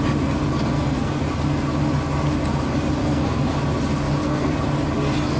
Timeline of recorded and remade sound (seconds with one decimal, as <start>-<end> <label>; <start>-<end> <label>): 0.0-0.6 recorded; 0.6-1.2 remade; 1.2-3.0 recorded; 3.0-3.6 remade; 3.6-4.0 recorded; 4.0-4.5 remade; 4.5-5.4 recorded